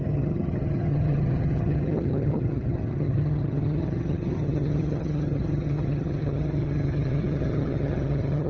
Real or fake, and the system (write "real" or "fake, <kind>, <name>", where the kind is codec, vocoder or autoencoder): fake, vocoder, HiFi-GAN